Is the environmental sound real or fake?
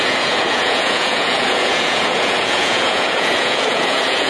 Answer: fake